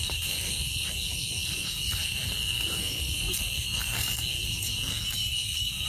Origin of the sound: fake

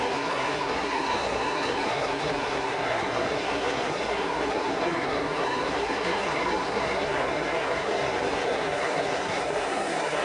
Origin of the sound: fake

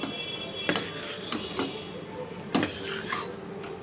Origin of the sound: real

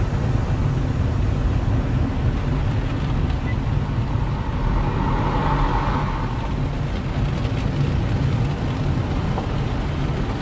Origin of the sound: real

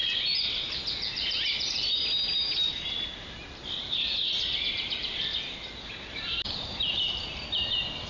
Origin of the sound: real